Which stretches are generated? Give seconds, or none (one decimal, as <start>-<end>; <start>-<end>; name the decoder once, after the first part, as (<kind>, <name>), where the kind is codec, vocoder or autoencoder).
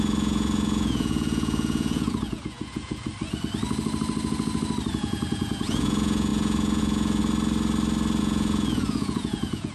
0.0-3.1 (vocoder, Vocos); 4.9-7.2; 8.2-9.7